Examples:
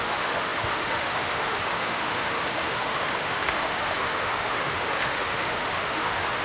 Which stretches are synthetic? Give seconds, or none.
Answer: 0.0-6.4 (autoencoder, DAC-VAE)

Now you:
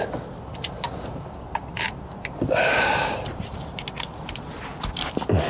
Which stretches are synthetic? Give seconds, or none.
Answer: 0.5-3.8 (vocoder, BigVGAN v2)

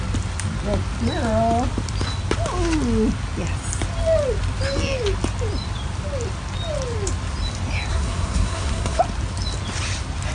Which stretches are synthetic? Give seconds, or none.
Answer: 7.9-9.0 (codec, SNAC)

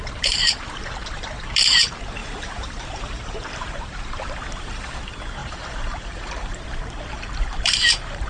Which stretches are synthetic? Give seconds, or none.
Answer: 0.0-8.3 (vocoder, BigVGAN v2)

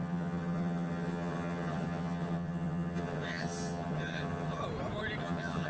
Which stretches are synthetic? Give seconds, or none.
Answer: 0.0-4.6 (vocoder, HiFi-GAN); 5.2-5.7

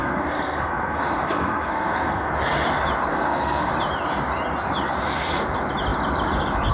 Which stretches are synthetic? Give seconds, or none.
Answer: 0.0-2.3 (codec, SNAC); 3.1-3.7